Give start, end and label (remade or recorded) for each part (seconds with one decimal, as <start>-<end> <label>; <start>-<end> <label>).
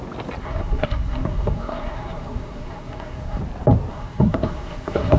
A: 0.0-0.4 recorded; 0.4-3.4 remade; 3.4-3.9 recorded; 3.9-5.2 remade